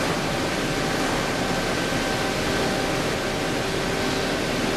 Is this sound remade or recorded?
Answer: recorded